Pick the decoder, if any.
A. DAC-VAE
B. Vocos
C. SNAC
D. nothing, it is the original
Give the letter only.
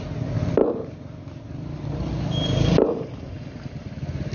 D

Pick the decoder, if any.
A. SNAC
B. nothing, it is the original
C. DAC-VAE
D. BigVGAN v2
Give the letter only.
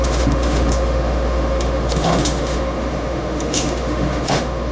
C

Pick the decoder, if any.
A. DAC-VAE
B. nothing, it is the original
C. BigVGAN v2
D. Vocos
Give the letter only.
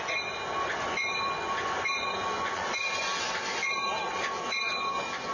D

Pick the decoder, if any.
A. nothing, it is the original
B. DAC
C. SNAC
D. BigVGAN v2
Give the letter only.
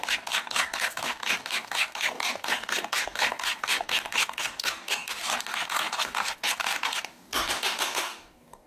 B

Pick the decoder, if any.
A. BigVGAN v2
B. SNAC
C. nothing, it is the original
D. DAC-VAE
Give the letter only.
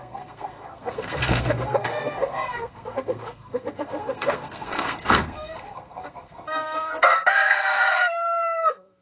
B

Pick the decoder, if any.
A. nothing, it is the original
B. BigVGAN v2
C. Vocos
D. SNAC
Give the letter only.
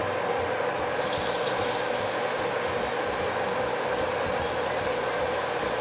A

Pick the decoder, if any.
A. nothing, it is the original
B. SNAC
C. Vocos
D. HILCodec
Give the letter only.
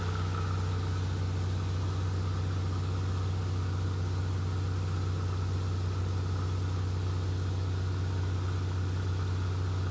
A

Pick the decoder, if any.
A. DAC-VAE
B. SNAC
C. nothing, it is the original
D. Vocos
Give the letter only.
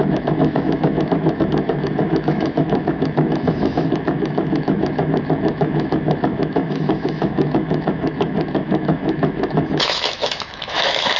A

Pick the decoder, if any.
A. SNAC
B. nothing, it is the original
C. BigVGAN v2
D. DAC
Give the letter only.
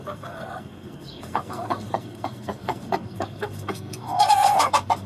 A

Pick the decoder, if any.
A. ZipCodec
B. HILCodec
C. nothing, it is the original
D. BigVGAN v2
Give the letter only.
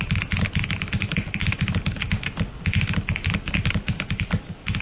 C